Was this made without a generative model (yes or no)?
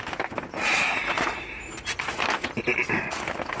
yes